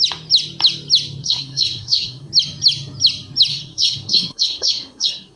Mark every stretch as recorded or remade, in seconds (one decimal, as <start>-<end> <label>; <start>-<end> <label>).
0.0-1.2 recorded; 1.2-2.3 remade; 2.3-3.5 recorded; 3.5-5.4 remade